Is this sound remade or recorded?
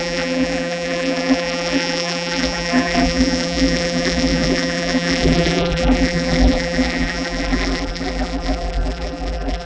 remade